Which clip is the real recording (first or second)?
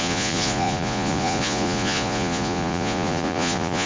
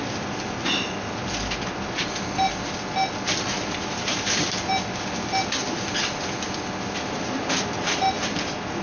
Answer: second